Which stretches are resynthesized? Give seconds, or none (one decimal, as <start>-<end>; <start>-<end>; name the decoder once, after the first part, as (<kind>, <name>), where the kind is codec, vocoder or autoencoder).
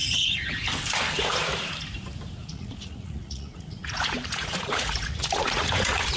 2.4-6.2 (vocoder, Vocos)